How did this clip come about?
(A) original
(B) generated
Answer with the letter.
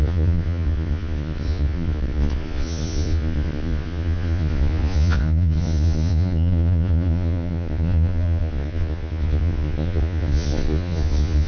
B